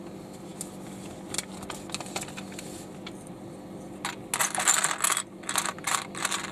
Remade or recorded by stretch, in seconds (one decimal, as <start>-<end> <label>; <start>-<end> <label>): 0.0-6.5 recorded